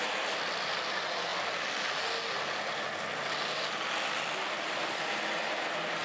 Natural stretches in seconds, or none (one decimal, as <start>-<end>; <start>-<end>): 0.0-6.0